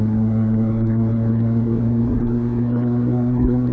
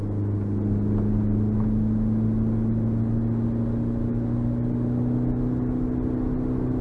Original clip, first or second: second